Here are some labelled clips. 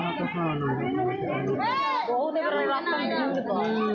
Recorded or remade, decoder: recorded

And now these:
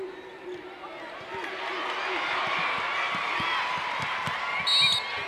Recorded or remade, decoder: recorded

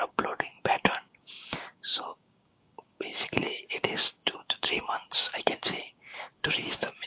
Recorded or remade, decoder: remade, codec, DAC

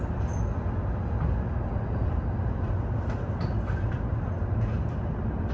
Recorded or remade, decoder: recorded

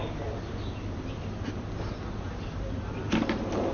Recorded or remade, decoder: recorded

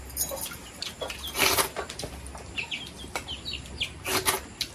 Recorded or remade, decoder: recorded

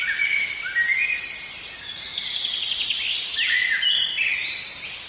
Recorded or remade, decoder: recorded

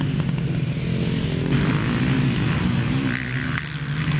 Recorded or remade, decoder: recorded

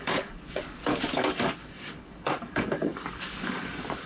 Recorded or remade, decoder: remade, codec, DAC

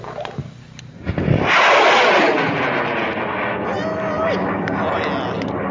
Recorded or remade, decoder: recorded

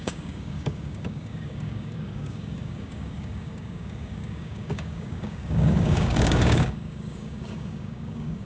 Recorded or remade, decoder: remade, codec, DAC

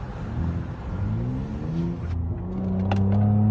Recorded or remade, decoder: recorded